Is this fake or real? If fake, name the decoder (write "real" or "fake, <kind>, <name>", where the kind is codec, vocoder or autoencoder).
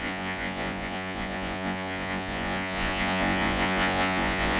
fake, vocoder, Vocos